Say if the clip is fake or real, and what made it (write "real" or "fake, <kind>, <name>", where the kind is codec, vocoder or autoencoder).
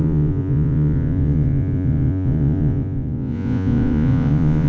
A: fake, vocoder, Vocos